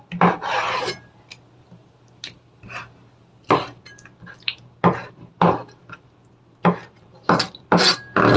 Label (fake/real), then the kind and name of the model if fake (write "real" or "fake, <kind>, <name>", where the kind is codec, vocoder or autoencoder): real